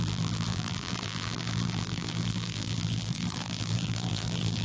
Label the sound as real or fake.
fake